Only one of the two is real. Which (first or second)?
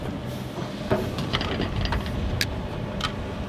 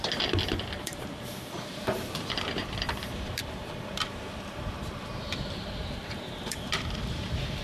first